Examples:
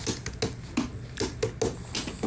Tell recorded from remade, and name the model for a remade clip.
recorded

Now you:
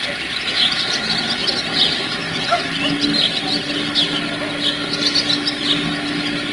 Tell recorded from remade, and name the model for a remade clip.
recorded